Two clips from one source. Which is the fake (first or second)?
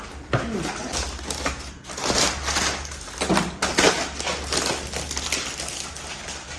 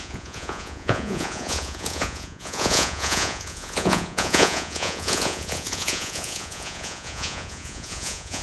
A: second